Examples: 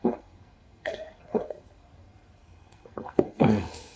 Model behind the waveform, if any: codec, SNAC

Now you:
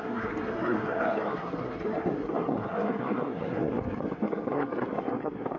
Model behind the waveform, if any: codec, SNAC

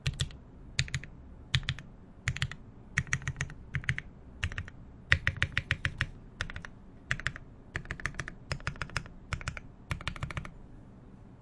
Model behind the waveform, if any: none